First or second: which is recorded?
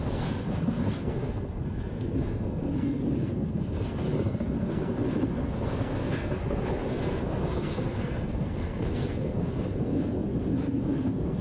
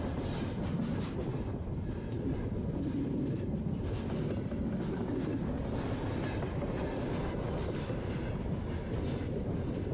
second